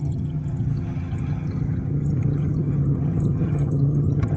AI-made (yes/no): yes